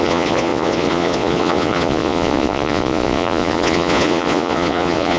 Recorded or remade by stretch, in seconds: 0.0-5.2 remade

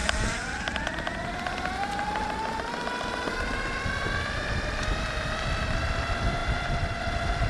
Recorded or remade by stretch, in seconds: 0.0-7.5 recorded

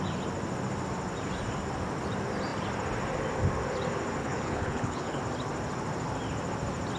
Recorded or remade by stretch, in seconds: 0.0-4.2 recorded; 4.2-5.2 remade; 5.2-7.0 recorded